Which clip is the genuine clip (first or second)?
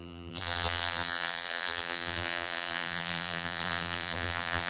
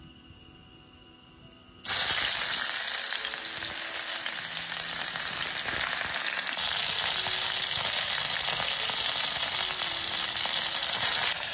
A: second